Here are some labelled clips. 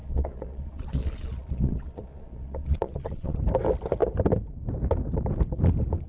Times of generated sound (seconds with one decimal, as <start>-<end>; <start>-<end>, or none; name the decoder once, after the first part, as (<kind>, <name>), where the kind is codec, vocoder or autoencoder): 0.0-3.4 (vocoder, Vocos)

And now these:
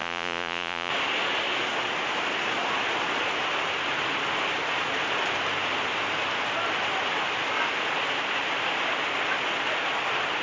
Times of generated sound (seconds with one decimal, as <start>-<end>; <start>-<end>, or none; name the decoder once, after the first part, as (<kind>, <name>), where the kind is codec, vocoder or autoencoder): 0.0-0.9 (vocoder, Vocos)

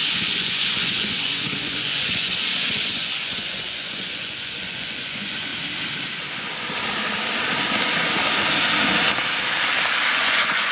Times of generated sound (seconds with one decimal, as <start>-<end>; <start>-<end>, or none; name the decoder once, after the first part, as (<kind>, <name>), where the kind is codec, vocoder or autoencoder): 0.0-5.5 (vocoder, Vocos); 10.1-10.7

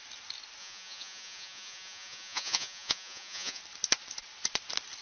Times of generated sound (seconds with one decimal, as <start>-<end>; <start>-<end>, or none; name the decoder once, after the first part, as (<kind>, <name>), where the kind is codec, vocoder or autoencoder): 0.6-3.6 (vocoder, Vocos)

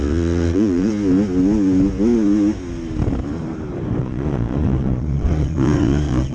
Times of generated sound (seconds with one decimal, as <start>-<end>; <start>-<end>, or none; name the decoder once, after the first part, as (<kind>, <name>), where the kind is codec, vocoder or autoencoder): 0.0-0.9 (vocoder, Vocos); 4.0-6.3

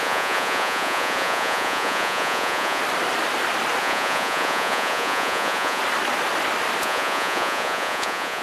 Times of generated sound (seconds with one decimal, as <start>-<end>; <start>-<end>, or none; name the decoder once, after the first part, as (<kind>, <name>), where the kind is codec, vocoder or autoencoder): 0.0-2.8 (vocoder, Vocos); 3.8-5.8; 6.8-8.4